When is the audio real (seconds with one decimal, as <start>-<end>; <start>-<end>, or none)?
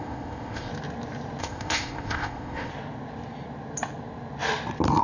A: 0.7-1.4; 2.7-5.0